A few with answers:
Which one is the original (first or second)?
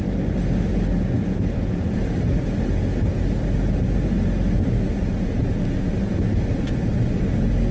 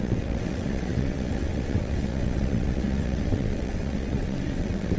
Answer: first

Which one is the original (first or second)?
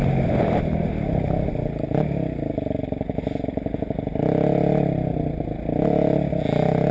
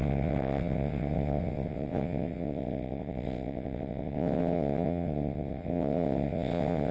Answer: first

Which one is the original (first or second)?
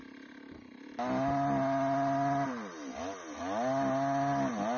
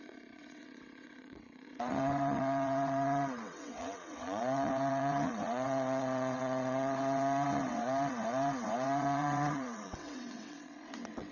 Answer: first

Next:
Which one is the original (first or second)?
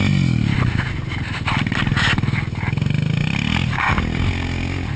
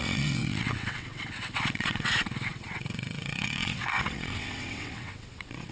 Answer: first